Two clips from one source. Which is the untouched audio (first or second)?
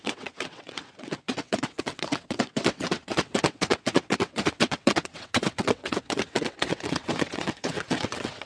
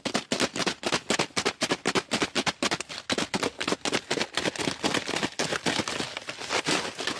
second